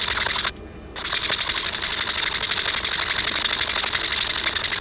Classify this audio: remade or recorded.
recorded